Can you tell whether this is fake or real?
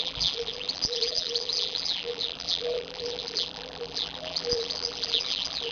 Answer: fake